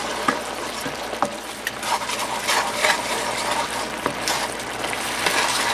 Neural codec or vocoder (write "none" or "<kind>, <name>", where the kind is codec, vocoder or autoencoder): vocoder, BigVGAN v2